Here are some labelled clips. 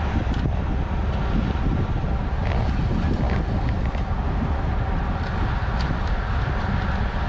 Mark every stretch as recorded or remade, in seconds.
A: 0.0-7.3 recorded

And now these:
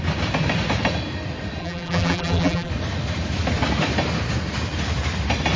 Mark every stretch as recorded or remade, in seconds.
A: 0.0-1.6 recorded; 1.6-2.7 remade; 2.7-5.6 recorded

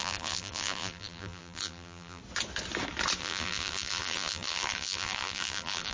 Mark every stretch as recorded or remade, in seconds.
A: 0.0-2.2 remade; 2.2-3.2 recorded; 3.2-5.9 remade

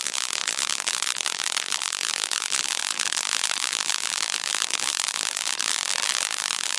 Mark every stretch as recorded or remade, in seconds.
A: 0.0-6.8 remade

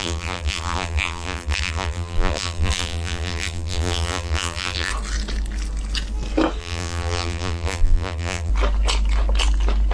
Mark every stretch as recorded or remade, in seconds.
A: 0.0-4.9 remade; 4.9-6.6 recorded; 6.6-8.5 remade; 8.5-9.9 recorded

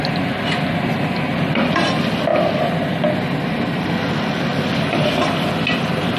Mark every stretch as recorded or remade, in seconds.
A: 0.0-6.2 recorded

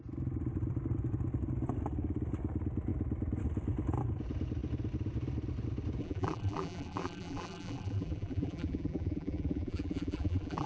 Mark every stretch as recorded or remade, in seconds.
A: 0.0-6.0 recorded; 6.0-10.7 remade

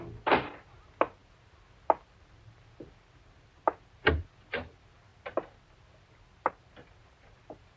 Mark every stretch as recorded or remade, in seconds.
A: 0.0-7.8 recorded